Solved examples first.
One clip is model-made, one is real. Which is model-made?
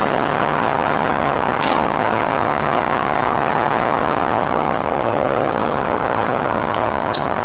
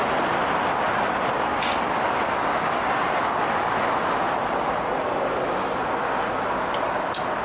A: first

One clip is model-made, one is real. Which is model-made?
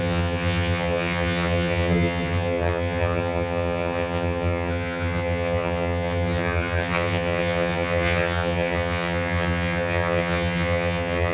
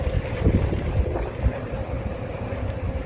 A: first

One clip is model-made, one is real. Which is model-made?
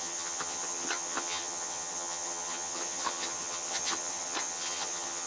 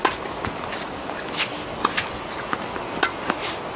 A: first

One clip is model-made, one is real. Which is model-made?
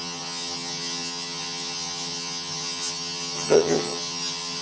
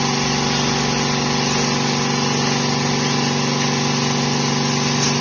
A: first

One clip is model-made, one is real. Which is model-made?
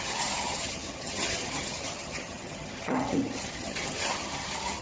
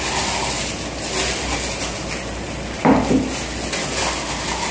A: first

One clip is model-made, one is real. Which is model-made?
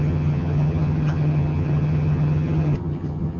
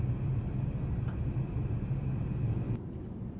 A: first